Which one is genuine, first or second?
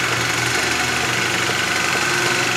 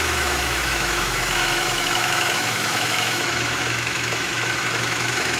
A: first